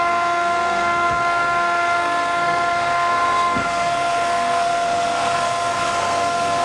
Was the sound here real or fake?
fake